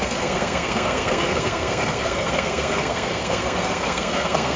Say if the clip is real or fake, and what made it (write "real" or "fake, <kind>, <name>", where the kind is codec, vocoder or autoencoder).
fake, codec, SNAC